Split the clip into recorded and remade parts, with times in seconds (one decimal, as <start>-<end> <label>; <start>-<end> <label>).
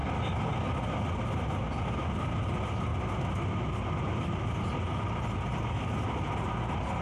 0.0-7.0 recorded